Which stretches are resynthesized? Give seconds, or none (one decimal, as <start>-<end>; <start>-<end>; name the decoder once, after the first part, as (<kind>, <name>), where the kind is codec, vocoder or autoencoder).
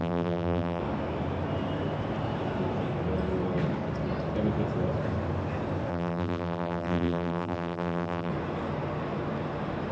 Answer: 0.0-0.8 (vocoder, BigVGAN v2); 5.9-8.3